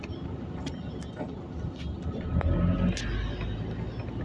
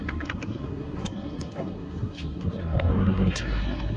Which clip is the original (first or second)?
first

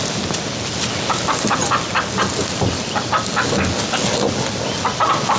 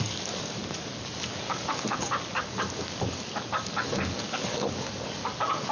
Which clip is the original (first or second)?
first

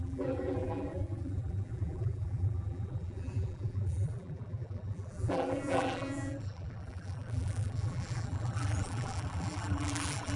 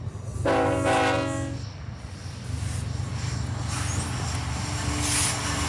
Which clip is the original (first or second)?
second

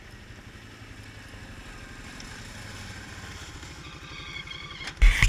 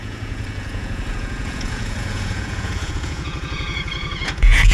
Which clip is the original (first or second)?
first